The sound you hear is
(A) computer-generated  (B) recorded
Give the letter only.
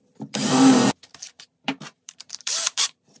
A